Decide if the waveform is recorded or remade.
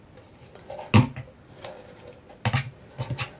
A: recorded